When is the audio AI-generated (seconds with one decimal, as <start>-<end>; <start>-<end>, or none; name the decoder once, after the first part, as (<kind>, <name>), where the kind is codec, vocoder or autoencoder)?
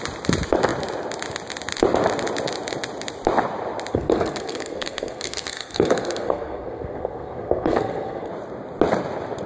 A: 3.9-8.3 (codec, SNAC)